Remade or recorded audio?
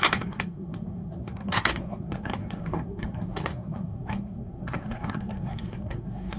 remade